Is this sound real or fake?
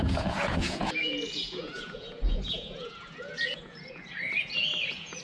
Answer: fake